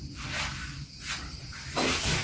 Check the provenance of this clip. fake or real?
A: real